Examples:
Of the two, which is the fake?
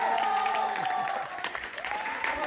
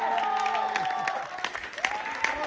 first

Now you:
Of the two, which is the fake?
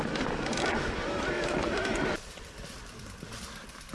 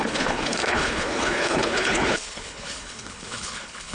second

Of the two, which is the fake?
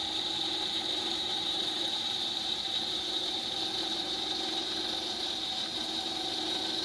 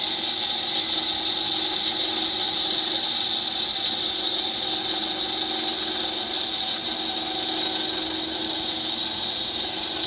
first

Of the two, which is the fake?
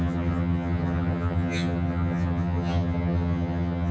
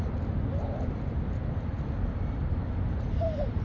first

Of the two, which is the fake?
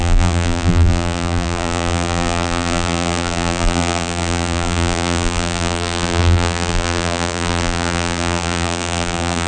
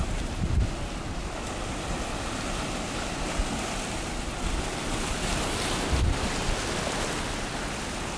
first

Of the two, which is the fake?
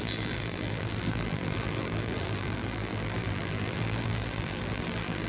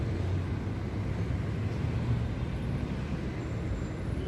first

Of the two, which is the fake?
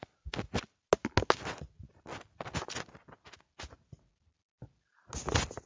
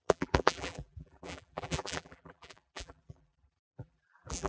second